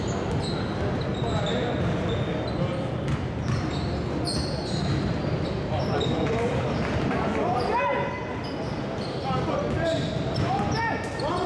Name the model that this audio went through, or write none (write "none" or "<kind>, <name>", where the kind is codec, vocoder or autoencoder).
none